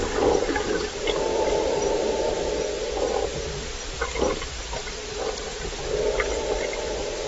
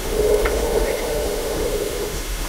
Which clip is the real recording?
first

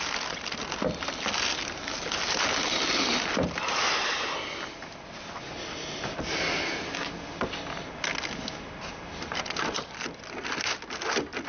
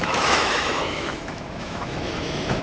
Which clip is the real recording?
first